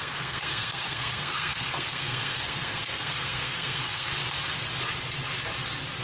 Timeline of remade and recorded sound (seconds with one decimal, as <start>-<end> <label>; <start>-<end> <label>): 0.0-4.1 remade; 4.1-6.0 recorded